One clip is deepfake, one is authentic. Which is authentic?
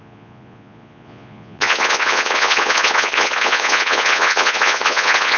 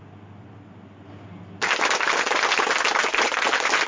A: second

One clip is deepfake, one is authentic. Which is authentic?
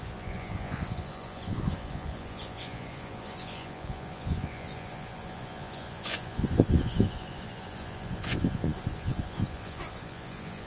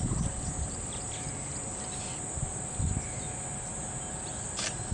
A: second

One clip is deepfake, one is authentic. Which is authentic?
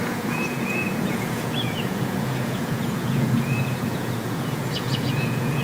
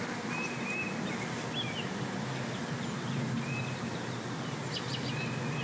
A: second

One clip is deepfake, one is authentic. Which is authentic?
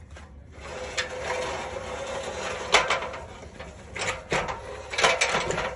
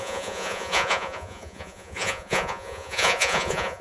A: first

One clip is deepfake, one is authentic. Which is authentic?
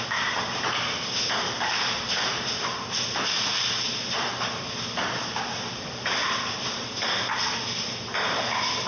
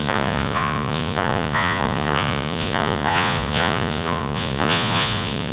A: first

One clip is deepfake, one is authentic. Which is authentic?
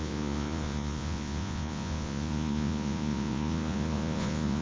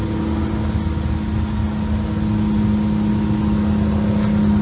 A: second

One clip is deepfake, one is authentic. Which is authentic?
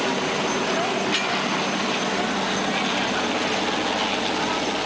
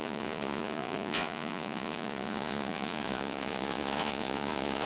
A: first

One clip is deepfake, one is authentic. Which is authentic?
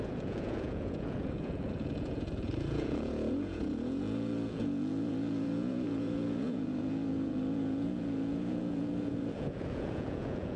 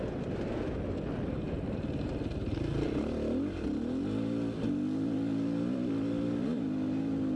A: second